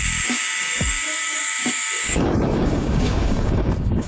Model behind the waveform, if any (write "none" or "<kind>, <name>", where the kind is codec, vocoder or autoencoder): codec, DAC